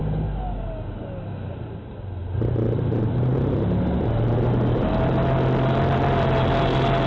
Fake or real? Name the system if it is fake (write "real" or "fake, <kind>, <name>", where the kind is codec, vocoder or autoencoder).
real